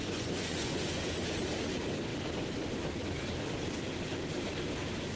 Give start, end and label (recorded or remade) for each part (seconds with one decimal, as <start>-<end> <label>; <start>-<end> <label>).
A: 0.0-1.0 remade; 1.0-5.2 recorded